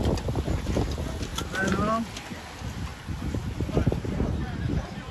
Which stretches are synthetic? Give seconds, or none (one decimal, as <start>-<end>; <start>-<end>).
none